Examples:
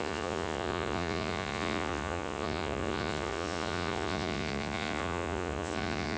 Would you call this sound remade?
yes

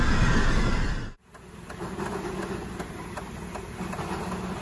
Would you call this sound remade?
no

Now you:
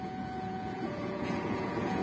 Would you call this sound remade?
yes